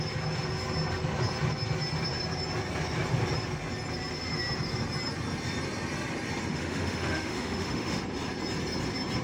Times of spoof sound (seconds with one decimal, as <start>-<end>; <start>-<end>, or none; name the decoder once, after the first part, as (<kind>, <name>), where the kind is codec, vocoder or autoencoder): 6.5-8.0 (autoencoder, DAC-VAE)